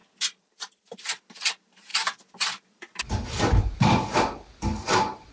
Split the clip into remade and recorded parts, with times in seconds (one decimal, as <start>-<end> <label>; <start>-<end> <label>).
0.0-5.3 remade